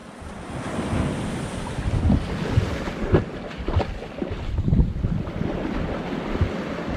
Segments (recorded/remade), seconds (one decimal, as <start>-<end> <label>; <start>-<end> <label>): 0.0-7.0 recorded